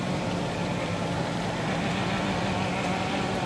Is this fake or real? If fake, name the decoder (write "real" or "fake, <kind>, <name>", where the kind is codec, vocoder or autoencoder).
fake, vocoder, BigVGAN v2